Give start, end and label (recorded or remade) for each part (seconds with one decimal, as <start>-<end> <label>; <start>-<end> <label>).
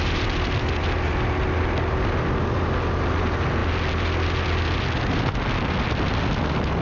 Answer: 0.0-6.8 recorded